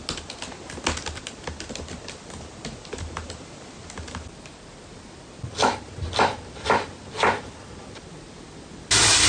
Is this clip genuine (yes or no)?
yes